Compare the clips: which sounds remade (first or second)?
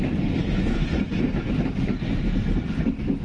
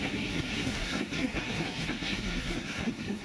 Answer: second